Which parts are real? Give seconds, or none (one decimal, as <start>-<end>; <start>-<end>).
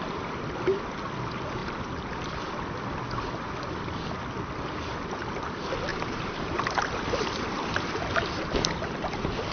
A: 0.0-5.9; 6.6-9.5